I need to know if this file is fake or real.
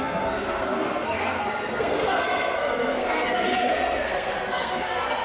fake